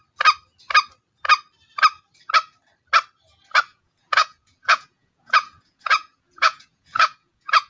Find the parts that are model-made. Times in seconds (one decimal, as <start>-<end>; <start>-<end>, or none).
3.7-7.7